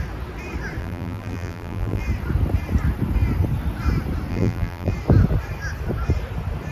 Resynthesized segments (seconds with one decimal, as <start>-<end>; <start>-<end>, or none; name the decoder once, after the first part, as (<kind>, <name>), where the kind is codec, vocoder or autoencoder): 0.8-2.0 (vocoder, BigVGAN v2); 4.3-4.9